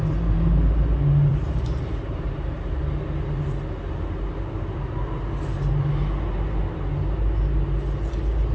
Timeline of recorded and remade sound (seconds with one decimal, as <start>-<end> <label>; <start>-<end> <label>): 0.0-1.3 recorded; 1.3-2.8 remade; 2.8-8.5 recorded